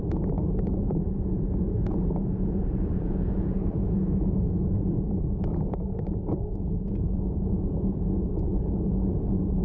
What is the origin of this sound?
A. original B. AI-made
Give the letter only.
B